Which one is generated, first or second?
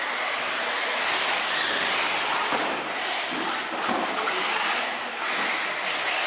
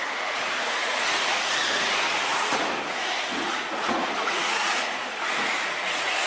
second